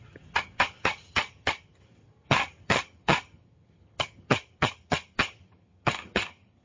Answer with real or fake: fake